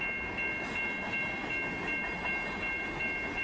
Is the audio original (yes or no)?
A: yes